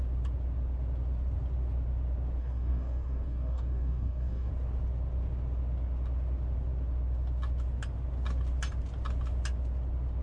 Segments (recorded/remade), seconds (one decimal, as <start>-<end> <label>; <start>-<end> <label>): 0.0-2.4 recorded; 2.4-4.5 remade; 4.5-10.2 recorded